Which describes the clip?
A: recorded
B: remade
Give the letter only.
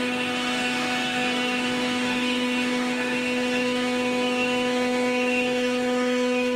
B